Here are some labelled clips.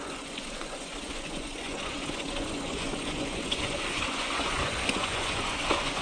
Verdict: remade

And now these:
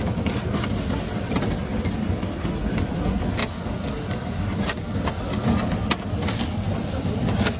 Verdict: recorded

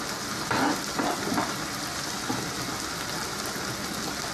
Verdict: recorded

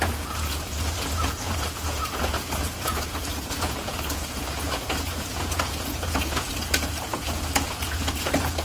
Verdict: remade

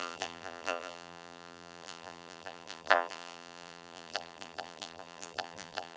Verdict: remade